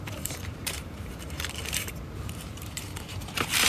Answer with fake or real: fake